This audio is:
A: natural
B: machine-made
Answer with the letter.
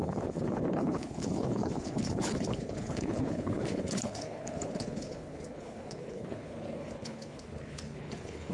B